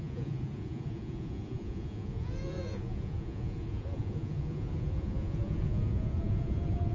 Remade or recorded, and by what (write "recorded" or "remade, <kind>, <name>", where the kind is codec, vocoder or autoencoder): remade, vocoder, Vocos